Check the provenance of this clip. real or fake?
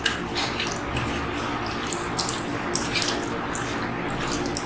real